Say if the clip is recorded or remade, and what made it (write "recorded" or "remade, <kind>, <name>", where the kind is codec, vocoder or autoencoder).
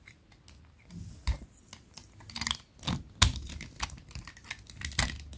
recorded